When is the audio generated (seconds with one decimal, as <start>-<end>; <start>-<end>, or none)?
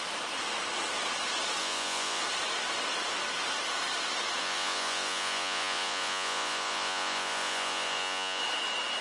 1.6-2.2; 4.4-8.4